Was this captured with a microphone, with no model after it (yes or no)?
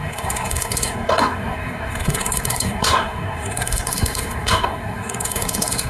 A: no